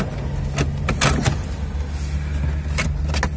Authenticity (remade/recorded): recorded